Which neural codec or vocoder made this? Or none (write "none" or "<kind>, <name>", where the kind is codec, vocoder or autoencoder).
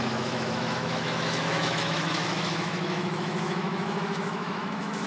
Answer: autoencoder, DAC-VAE